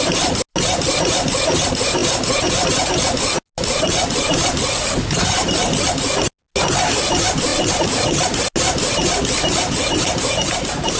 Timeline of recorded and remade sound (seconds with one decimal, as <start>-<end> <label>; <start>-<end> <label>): 0.0-7.5 recorded; 7.5-8.4 remade; 8.4-11.0 recorded